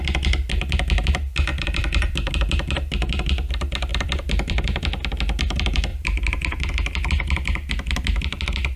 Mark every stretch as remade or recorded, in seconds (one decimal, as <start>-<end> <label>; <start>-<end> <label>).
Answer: 0.0-1.5 recorded; 1.5-2.3 remade; 2.3-3.9 recorded; 3.9-4.8 remade; 4.8-5.9 recorded; 5.9-6.7 remade; 6.7-8.8 recorded